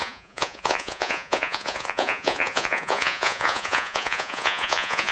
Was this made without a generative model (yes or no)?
no